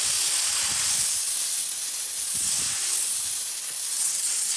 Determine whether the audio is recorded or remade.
recorded